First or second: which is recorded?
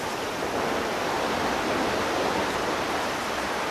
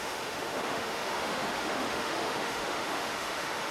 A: first